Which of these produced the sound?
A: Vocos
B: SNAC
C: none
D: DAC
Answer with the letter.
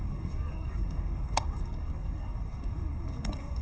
D